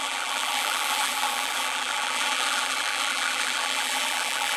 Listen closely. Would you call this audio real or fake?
fake